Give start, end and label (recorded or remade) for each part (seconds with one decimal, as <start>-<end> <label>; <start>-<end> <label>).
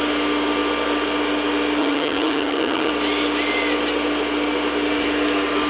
0.0-1.8 recorded; 1.8-2.9 remade; 2.9-5.7 recorded